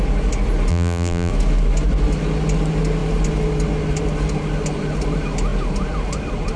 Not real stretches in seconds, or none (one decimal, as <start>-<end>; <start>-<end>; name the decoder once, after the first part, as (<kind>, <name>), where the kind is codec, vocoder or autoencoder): 0.7-1.3 (vocoder, BigVGAN v2)